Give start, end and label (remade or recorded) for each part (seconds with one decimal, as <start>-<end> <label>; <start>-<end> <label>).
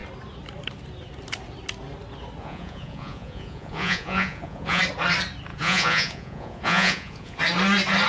0.0-2.4 recorded; 2.4-4.8 remade; 4.8-5.5 recorded; 5.5-7.4 remade; 7.4-8.1 recorded